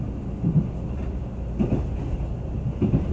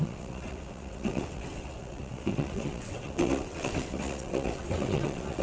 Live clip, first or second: first